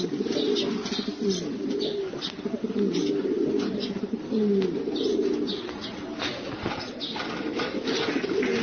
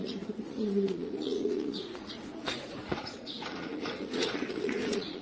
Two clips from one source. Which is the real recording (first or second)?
first